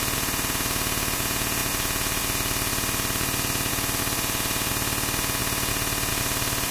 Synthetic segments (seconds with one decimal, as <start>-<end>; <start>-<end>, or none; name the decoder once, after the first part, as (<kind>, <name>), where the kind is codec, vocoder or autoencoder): none